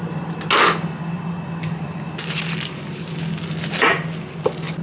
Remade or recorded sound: recorded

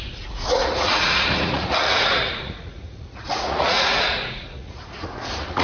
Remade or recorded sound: remade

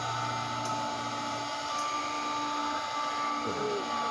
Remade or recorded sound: recorded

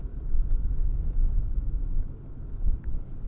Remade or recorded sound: recorded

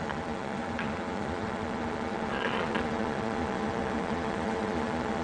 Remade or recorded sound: remade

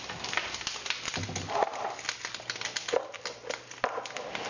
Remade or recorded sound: recorded